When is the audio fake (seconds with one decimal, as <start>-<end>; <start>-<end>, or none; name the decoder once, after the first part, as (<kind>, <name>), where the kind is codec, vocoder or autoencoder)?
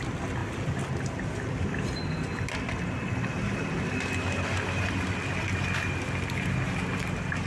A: none